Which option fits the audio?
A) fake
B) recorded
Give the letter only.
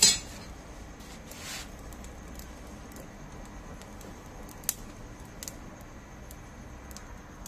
B